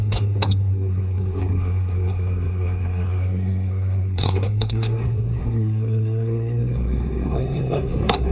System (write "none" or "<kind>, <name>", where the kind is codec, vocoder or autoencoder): codec, SNAC